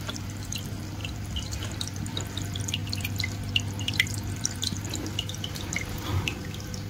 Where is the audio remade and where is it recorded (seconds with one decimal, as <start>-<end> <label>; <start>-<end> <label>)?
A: 0.0-6.9 recorded